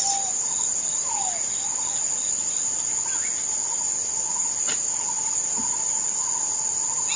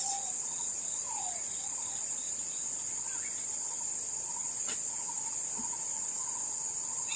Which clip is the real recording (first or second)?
first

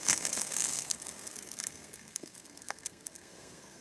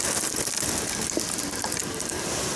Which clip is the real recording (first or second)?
second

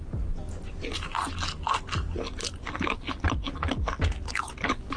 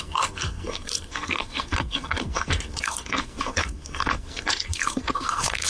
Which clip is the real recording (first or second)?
first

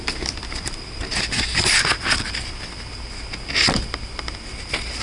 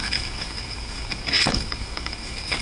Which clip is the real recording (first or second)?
first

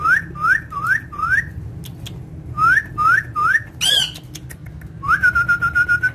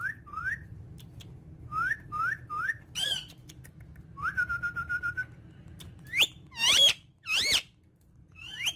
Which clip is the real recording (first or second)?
first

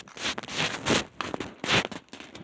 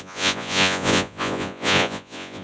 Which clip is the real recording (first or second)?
first